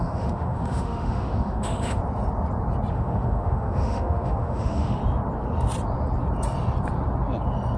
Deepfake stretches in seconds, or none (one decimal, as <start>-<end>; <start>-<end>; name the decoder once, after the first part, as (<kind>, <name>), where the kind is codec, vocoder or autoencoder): 0.0-2.0 (autoencoder, DAC-VAE); 2.9-5.0